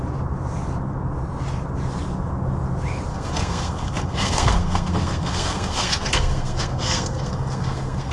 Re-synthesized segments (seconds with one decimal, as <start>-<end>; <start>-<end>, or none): 3.1-8.1